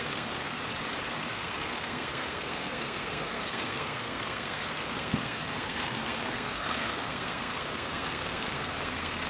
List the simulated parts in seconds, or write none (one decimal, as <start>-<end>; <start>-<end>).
0.0-0.6; 1.1-9.3